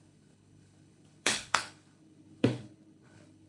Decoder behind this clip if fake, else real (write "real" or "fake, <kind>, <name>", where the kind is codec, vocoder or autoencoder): fake, codec, HILCodec